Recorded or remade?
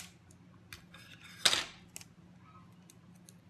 recorded